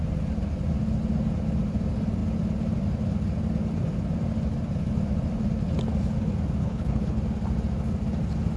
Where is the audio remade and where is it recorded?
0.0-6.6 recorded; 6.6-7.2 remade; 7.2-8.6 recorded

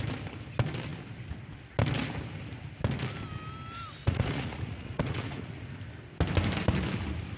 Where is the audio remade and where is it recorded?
0.0-4.0 recorded; 4.0-5.5 remade; 5.5-7.4 recorded

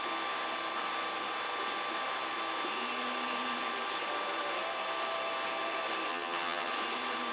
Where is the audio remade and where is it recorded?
0.0-6.1 recorded; 6.1-6.7 remade; 6.7-7.3 recorded

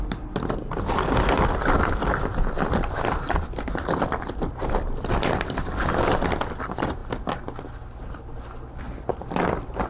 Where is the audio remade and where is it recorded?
0.0-0.7 recorded; 0.7-5.6 remade; 5.6-9.9 recorded